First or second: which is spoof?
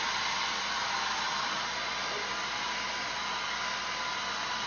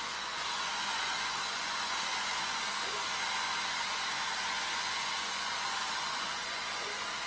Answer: second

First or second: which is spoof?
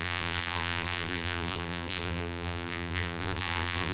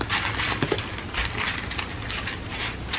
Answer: first